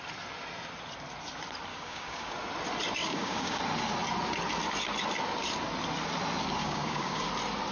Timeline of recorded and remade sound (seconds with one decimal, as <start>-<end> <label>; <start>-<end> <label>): 0.0-1.7 recorded; 1.7-2.3 remade; 2.3-3.0 recorded; 3.0-3.6 remade; 3.6-6.6 recorded; 6.6-7.3 remade; 7.3-7.7 recorded